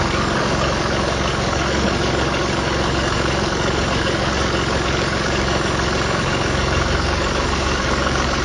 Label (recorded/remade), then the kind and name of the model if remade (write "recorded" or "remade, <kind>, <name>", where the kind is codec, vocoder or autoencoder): remade, codec, DAC